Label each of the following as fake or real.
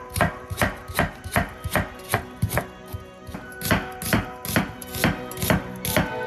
real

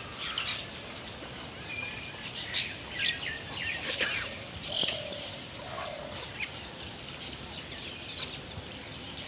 real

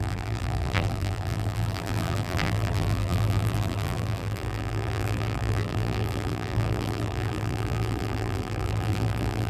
fake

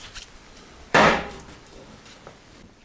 fake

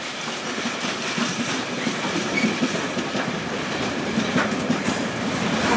fake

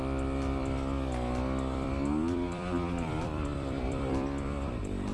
fake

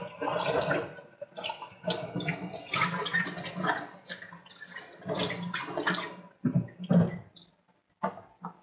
real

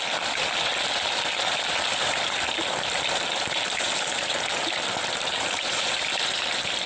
fake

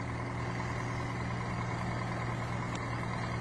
real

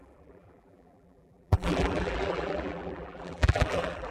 fake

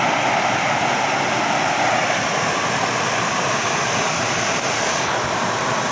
real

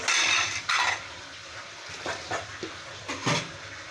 fake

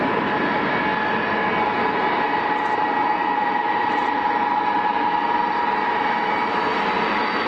real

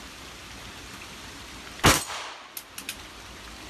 real